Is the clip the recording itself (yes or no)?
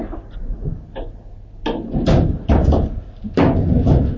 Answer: yes